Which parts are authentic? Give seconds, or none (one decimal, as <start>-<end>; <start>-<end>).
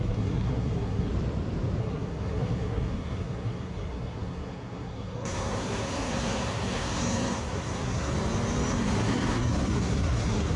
1.1-1.8; 8.1-8.7